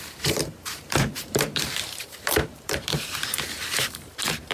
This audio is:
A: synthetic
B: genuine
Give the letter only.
A